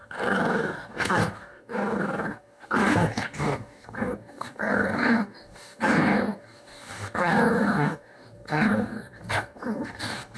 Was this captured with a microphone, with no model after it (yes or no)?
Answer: no